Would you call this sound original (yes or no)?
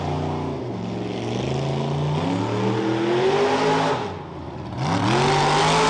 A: yes